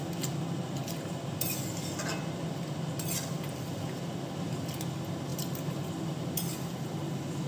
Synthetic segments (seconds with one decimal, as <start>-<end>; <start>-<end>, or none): none